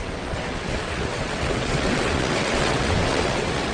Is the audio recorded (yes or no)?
no